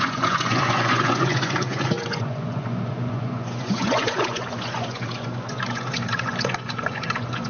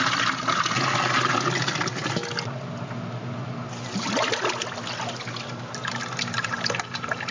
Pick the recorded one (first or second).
second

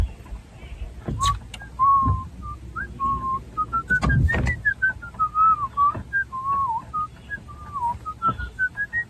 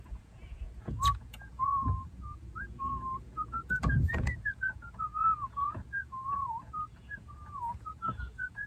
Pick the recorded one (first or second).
first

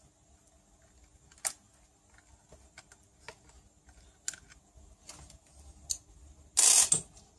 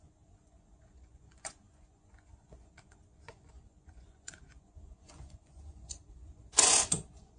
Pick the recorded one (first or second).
first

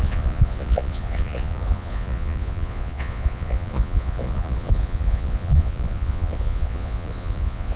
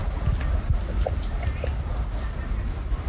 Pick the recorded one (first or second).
second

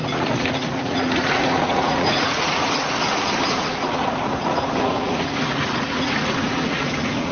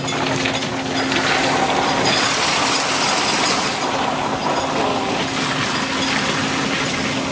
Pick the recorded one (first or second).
second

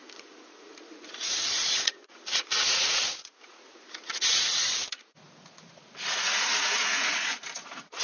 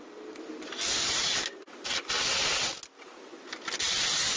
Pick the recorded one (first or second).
second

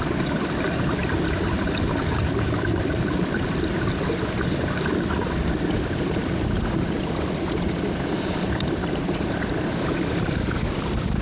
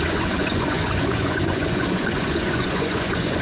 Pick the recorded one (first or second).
first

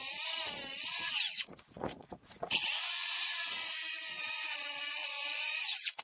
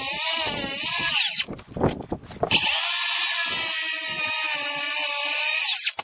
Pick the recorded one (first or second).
second